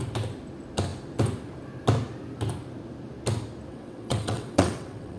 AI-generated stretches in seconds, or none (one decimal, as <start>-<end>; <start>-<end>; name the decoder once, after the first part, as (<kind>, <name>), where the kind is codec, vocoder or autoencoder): 3.7-5.2 (vocoder, WaveNeXt)